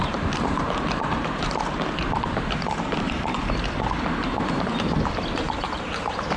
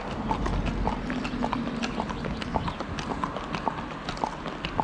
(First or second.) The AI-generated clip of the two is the first